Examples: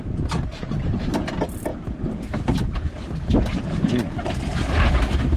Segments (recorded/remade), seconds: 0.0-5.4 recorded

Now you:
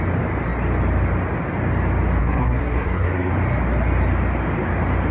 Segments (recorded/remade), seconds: 0.0-2.2 recorded; 2.2-3.3 remade; 3.3-5.1 recorded